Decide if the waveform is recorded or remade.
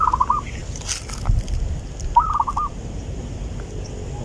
recorded